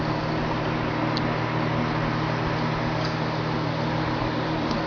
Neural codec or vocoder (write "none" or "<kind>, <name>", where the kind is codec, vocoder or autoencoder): none